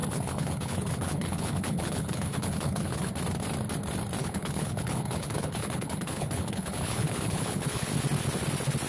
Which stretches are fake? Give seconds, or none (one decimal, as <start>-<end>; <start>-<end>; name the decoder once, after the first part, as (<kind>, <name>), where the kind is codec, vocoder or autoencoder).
0.0-3.1 (codec, HILCodec); 4.2-7.9